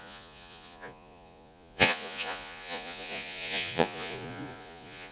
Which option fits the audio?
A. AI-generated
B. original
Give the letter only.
A